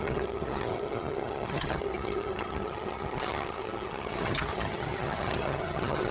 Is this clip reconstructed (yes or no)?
yes